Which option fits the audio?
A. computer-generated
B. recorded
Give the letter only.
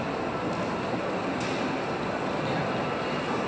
B